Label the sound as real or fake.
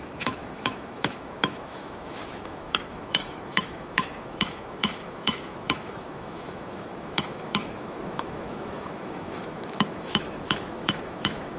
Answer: fake